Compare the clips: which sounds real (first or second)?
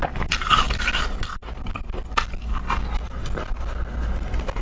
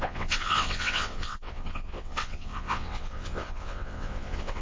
first